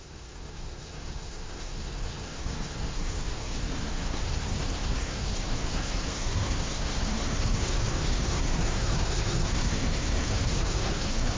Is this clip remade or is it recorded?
remade